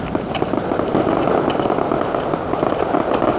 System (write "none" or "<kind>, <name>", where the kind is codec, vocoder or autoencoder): none